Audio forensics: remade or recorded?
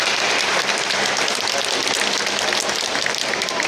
recorded